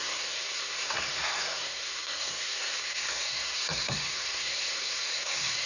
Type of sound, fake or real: fake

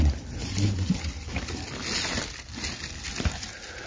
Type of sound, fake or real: real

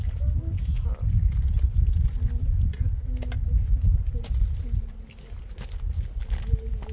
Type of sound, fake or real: real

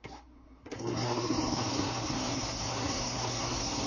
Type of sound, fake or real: fake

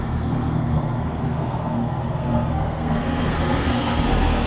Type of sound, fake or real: fake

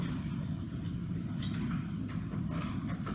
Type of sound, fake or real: real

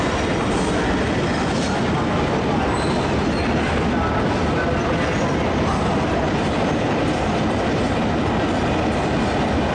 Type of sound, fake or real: real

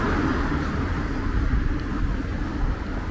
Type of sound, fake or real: real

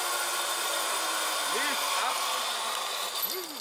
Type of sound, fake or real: real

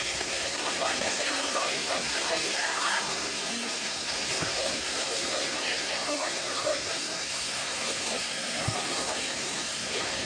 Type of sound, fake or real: fake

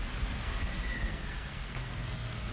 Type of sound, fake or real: fake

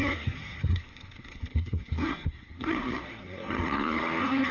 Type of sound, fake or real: fake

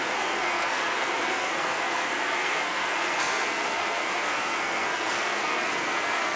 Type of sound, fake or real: fake